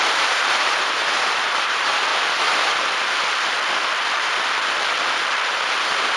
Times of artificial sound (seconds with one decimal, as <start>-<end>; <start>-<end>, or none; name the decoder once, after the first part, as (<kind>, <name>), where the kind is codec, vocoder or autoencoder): 0.0-2.1 (vocoder, BigVGAN v2); 5.8-6.2